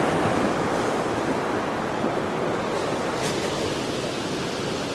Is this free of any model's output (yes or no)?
yes